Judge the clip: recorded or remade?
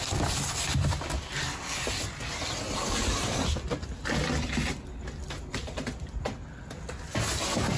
recorded